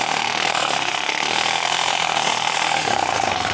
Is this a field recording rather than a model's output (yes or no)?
no